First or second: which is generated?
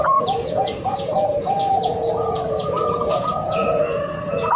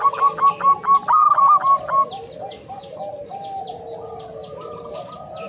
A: first